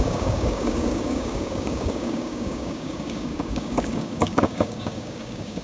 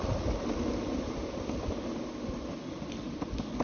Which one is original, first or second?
second